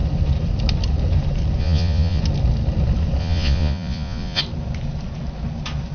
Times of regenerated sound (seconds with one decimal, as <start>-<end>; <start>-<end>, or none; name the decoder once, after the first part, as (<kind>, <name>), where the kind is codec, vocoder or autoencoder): 1.6-2.2 (vocoder, Vocos); 3.2-4.4